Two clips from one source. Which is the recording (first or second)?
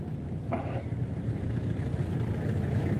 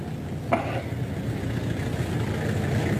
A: second